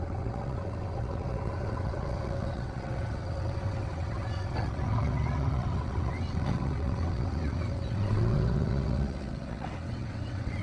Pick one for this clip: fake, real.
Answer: fake